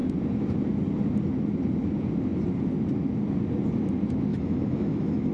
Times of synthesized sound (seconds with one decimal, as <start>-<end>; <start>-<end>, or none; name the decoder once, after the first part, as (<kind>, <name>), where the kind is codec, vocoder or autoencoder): 4.3-5.3 (autoencoder, DAC-VAE)